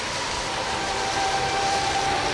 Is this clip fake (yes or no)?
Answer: no